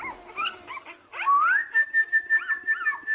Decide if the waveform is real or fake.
real